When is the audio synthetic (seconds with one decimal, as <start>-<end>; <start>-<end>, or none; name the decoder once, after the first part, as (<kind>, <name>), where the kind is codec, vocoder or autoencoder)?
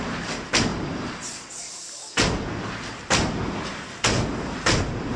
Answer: none